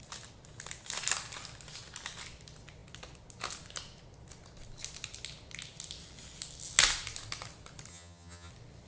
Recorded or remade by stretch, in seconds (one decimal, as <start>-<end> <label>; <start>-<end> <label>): 0.0-7.9 recorded; 7.9-8.5 remade; 8.5-8.9 recorded